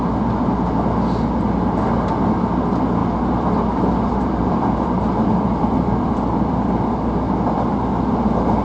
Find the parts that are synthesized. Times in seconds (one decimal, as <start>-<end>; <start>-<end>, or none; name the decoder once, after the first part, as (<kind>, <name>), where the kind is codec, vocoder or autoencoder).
3.0-8.2 (vocoder, BigVGAN v2)